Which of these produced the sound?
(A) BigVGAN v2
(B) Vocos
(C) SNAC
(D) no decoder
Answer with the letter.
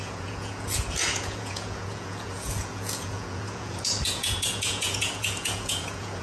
B